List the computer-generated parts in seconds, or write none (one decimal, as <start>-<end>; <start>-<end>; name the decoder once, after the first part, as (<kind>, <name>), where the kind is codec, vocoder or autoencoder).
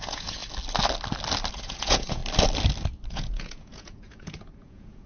0.0-0.4 (vocoder, Vocos); 1.5-2.2; 3.1-5.1